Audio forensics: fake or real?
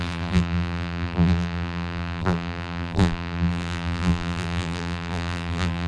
fake